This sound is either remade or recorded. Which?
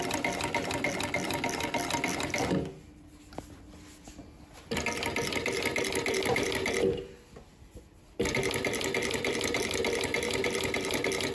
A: recorded